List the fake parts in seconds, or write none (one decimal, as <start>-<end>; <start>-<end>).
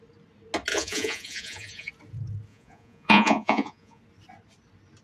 0.7-1.9; 2.5-4.0